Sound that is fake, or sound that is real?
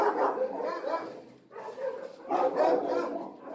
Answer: real